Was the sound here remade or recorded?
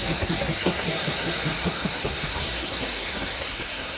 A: remade